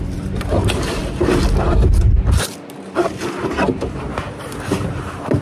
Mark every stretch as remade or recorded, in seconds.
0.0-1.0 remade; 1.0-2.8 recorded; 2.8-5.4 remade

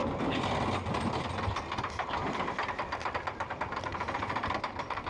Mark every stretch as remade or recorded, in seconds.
0.0-1.8 recorded; 1.8-5.1 remade

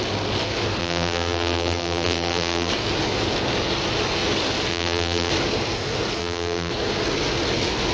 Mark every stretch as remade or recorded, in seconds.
0.0-0.8 recorded; 0.8-2.7 remade; 2.7-4.7 recorded; 4.7-5.3 remade; 5.3-6.2 recorded; 6.2-6.7 remade; 6.7-7.9 recorded

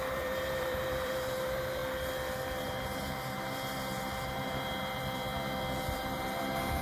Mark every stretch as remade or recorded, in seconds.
0.0-1.8 remade; 1.8-2.6 recorded; 2.6-5.3 remade; 5.3-6.0 recorded; 6.0-6.8 remade